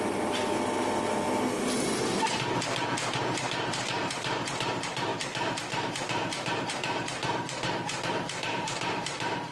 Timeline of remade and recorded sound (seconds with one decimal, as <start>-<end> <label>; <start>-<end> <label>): 0.0-0.4 remade; 0.4-4.0 recorded; 4.0-9.5 remade